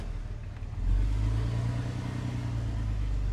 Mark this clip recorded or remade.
recorded